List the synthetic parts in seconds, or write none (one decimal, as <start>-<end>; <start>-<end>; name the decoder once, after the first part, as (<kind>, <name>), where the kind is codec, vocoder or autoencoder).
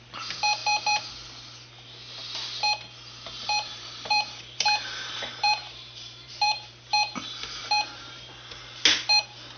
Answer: 3.7-6.7 (vocoder, BigVGAN v2); 7.6-8.3